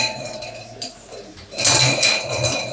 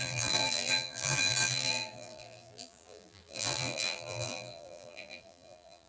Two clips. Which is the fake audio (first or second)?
second